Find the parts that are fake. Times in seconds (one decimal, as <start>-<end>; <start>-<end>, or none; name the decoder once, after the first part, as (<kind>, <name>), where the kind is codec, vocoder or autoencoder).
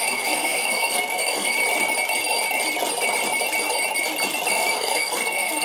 0.0-1.5 (codec, SNAC); 4.5-5.6